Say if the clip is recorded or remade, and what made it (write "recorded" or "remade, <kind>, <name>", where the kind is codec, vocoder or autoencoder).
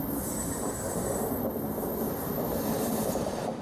recorded